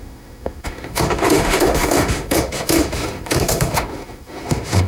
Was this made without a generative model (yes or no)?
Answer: no